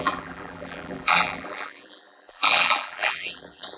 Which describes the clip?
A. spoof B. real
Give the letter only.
A